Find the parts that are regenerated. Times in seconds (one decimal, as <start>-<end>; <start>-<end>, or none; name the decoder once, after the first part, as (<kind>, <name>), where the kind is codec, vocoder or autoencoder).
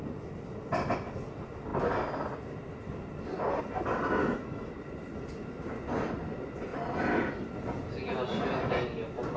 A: 4.2-4.7 (autoencoder, DAC-VAE)